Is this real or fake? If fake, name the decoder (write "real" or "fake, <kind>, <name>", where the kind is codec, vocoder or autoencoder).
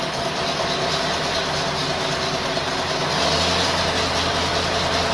real